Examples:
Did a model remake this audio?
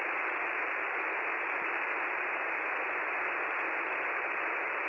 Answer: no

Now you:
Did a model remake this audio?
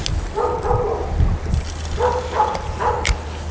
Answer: no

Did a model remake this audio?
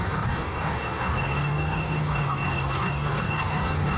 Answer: yes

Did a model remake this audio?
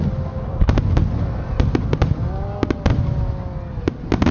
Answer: no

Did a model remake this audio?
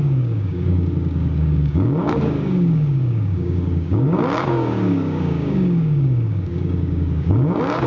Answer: yes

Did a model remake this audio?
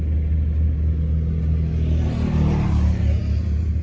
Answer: no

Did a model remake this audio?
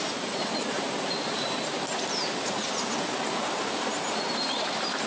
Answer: no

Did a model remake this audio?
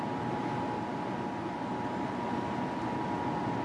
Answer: no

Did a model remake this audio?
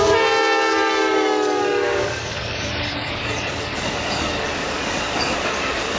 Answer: yes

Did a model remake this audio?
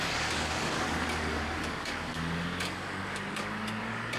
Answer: yes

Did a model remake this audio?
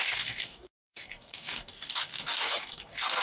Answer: yes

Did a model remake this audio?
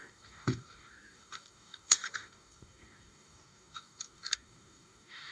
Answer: yes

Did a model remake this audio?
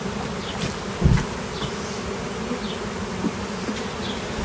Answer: no